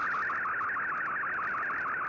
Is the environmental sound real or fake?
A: real